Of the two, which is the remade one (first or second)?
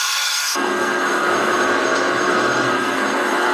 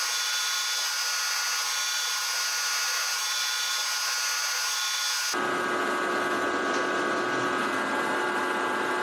first